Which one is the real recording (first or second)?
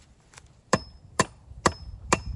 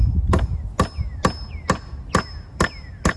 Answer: second